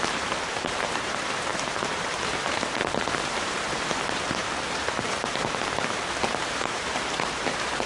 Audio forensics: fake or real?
fake